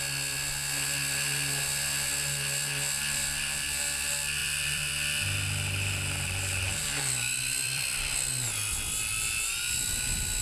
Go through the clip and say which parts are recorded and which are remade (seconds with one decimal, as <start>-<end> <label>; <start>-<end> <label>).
0.0-4.4 recorded; 4.4-4.9 remade; 4.9-6.8 recorded; 6.8-8.3 remade; 8.3-10.4 recorded